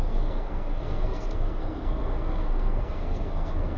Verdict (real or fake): fake